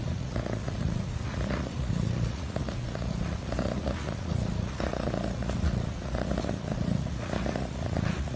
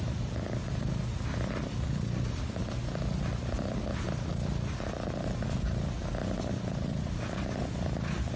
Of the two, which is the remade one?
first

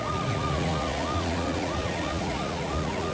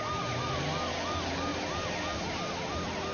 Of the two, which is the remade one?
first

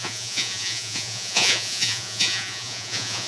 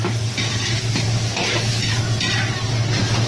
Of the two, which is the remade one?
first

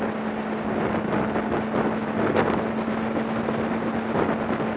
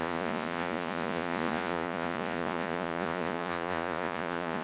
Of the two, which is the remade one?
second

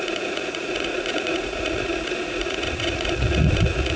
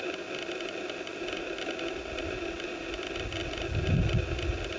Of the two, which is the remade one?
first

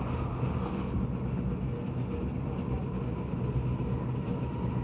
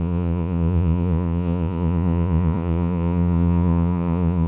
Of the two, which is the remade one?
second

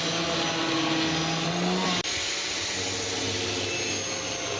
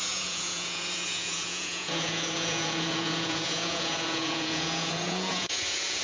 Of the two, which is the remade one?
second